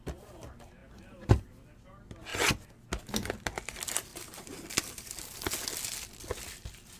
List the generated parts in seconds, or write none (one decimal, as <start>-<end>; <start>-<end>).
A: 0.8-1.4; 4.1-5.1